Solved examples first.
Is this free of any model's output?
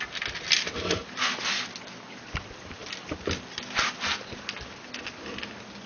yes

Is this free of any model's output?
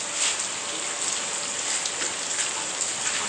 yes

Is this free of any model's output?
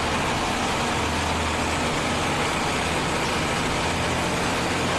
yes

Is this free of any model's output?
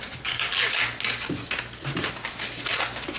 yes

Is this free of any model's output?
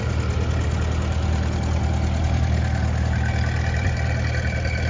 yes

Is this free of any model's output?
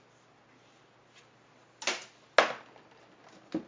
yes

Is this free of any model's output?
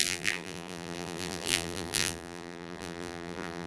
no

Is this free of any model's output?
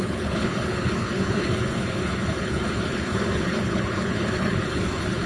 no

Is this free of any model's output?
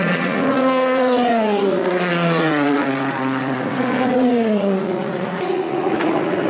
no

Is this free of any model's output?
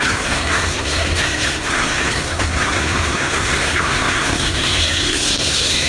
no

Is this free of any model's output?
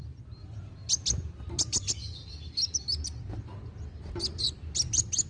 yes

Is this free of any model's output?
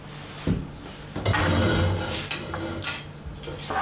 yes